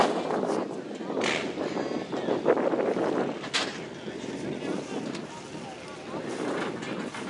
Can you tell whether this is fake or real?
real